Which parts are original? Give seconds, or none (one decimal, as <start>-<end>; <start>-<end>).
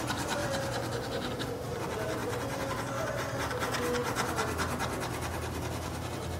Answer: 0.0-6.4